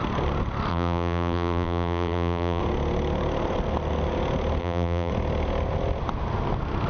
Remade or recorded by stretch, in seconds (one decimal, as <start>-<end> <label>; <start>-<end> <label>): 0.0-0.7 recorded; 0.7-2.6 remade; 2.6-4.6 recorded; 4.6-5.1 remade; 5.1-6.9 recorded